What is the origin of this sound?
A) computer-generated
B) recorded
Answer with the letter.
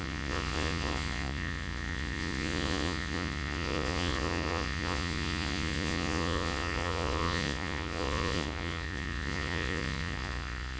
A